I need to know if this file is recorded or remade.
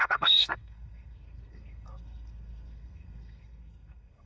remade